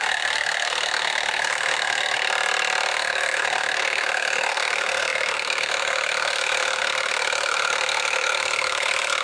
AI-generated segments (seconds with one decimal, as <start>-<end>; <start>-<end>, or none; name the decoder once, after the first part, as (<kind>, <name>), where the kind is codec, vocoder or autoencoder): 0.0-2.2 (codec, SNAC); 2.9-9.2